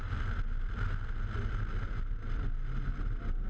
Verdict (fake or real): real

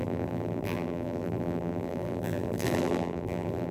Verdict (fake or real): fake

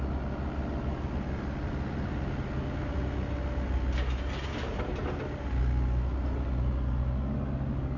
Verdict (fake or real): real